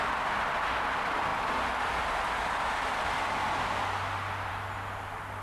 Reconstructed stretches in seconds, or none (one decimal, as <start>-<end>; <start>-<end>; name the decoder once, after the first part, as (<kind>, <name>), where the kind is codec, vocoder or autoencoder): none